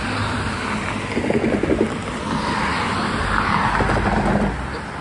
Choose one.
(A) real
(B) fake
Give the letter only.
A